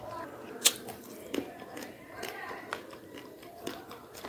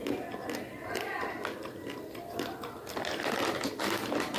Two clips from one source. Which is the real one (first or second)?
second